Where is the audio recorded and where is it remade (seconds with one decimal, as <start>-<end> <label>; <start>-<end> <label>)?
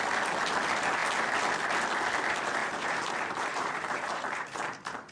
0.0-2.6 recorded; 2.6-5.1 remade